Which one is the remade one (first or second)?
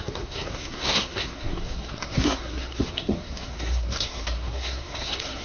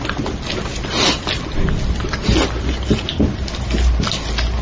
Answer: first